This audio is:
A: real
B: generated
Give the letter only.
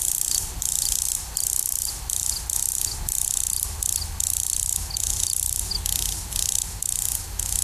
A